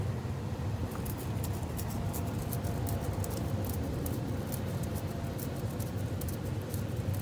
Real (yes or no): yes